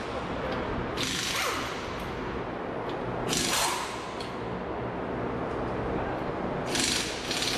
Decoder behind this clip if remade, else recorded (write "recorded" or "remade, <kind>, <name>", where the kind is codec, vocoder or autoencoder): recorded